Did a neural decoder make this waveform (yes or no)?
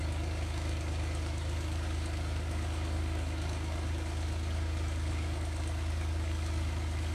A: yes